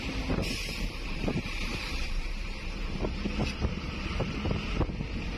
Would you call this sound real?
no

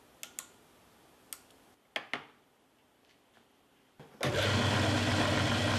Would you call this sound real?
yes